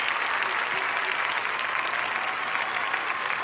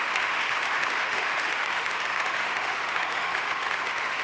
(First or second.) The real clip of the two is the first